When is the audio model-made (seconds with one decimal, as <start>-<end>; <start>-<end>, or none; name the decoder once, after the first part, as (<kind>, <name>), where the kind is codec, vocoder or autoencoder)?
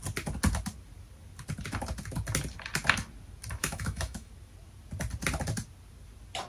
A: 3.6-4.3 (autoencoder, DAC-VAE)